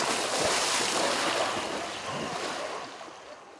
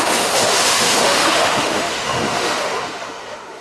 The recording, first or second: first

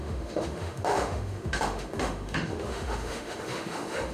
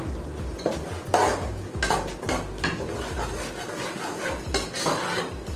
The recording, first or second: second